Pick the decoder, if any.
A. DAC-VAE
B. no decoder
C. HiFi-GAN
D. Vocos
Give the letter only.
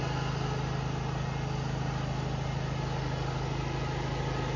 B